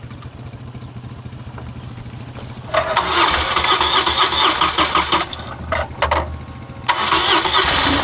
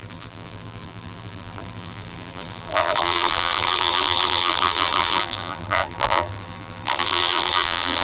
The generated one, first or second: second